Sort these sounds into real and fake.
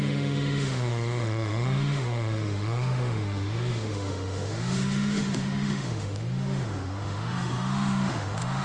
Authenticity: fake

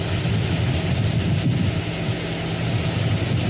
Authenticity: real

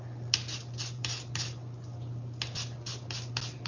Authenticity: real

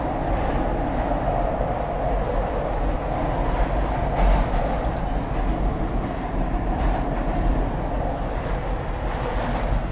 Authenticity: real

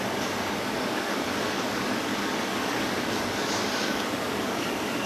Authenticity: fake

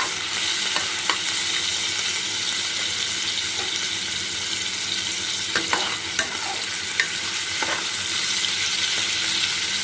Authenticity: real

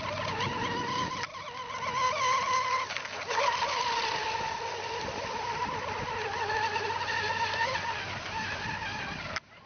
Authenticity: real